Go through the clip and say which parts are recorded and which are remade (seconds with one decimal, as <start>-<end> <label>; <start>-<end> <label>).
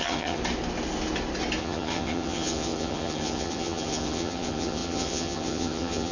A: 0.0-0.4 remade; 0.4-1.6 recorded; 1.6-6.1 remade